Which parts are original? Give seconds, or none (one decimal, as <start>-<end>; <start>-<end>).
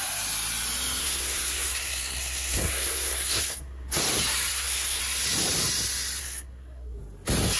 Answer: 0.0-1.0; 4.0-4.5; 5.0-6.2; 7.0-7.6